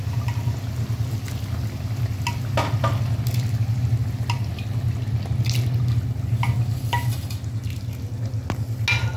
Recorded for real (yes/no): yes